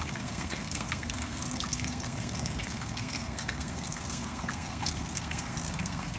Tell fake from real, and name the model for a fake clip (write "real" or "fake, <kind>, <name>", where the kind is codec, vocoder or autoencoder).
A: fake, codec, SNAC